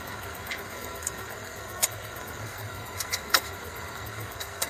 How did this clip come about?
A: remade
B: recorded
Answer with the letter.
A